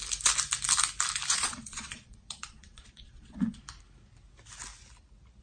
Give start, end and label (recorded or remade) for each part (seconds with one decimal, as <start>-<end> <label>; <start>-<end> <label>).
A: 0.0-1.3 recorded; 1.3-3.6 remade; 3.6-5.4 recorded